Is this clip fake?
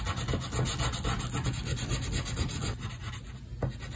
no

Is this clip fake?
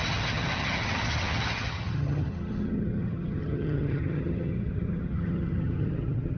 yes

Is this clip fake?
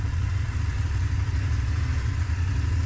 no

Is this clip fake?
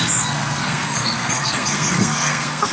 yes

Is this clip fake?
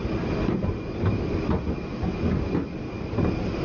no